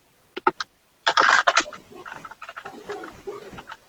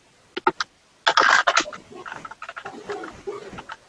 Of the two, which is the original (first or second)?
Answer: second